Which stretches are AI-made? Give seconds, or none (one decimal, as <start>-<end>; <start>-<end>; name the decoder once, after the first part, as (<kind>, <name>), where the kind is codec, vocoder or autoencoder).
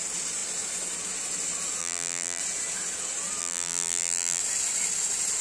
1.8-2.4 (vocoder, BigVGAN v2); 3.4-4.4